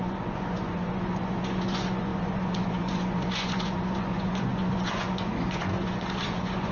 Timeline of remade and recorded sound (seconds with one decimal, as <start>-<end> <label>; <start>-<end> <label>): 0.0-6.7 remade